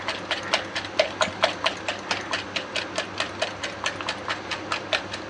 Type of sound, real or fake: real